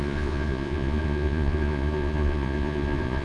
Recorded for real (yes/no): no